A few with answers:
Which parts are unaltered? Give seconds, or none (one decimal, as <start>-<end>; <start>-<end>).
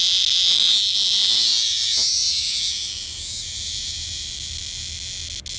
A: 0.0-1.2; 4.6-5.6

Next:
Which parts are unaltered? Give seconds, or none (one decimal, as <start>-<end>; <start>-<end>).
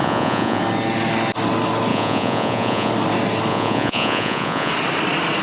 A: 0.6-1.9; 2.9-3.5; 4.7-5.4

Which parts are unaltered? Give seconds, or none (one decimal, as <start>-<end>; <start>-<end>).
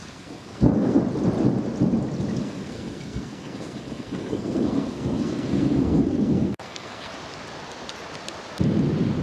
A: 1.0-2.4; 7.1-9.2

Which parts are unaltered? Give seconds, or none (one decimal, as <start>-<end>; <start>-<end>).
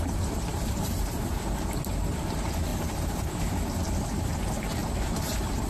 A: 0.0-0.5; 1.3-2.7; 3.4-5.7